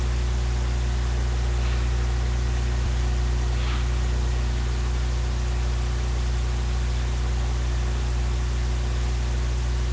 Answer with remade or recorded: recorded